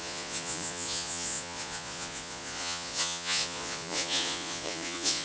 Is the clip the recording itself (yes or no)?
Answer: no